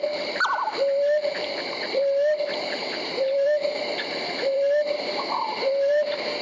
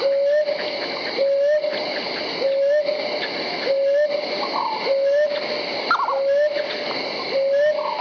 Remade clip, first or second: first